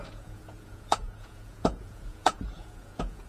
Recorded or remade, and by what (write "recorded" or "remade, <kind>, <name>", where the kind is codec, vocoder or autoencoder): remade, vocoder, Vocos